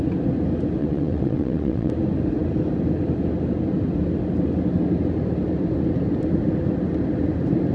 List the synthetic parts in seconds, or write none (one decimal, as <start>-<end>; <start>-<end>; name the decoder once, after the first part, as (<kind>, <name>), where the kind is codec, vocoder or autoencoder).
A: 0.8-1.9 (vocoder, WaveNeXt)